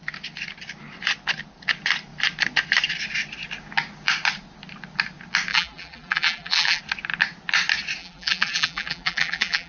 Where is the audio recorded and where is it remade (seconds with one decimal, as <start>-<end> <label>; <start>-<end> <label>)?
0.0-5.5 recorded; 5.5-6.8 remade; 6.8-8.0 recorded; 8.0-9.7 remade

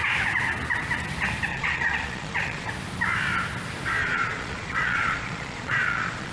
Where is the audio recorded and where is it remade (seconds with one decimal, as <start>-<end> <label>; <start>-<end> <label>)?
0.0-1.5 recorded; 1.5-2.7 remade; 2.7-4.0 recorded; 4.0-6.3 remade

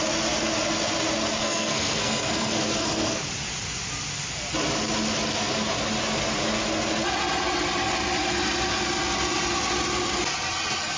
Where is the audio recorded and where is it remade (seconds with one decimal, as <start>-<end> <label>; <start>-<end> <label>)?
0.0-1.4 recorded; 1.4-3.2 remade; 3.2-11.0 recorded

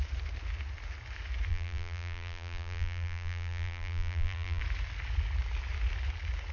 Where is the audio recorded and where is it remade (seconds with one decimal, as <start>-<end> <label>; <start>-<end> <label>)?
0.0-1.5 recorded; 1.5-4.6 remade; 4.6-6.5 recorded